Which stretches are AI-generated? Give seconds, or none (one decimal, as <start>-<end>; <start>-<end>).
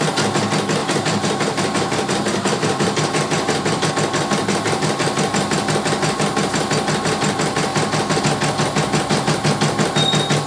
0.8-3.9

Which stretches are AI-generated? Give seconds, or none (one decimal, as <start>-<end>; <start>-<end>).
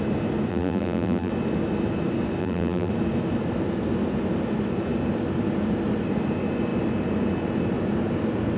0.5-1.3; 2.4-2.9